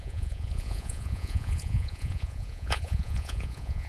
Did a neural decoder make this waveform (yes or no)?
yes